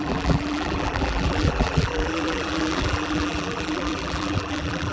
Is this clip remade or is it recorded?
remade